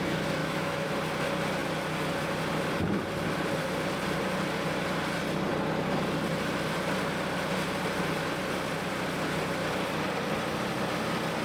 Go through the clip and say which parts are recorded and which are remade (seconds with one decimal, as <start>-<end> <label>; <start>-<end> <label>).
0.0-0.4 recorded; 0.4-0.9 remade; 0.9-11.4 recorded